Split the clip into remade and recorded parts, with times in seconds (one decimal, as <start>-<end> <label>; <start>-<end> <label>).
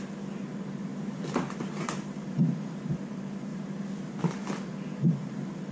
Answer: 0.0-0.9 recorded; 0.9-2.9 remade; 2.9-5.7 recorded